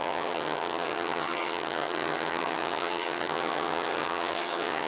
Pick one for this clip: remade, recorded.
remade